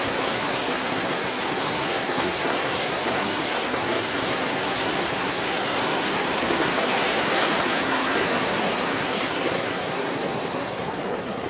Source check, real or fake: fake